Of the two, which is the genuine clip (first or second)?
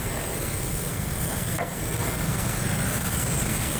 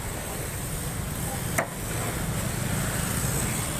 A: second